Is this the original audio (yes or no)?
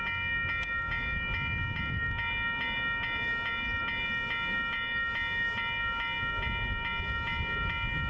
yes